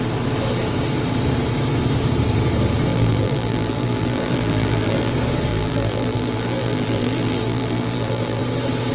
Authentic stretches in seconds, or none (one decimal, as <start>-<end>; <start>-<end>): 0.0-2.9; 5.1-5.5; 8.4-8.9